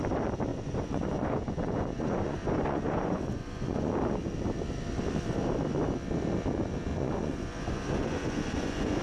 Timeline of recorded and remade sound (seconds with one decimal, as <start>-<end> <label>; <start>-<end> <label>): 0.0-0.5 recorded; 0.5-3.9 remade; 3.9-6.9 recorded; 6.9-9.0 remade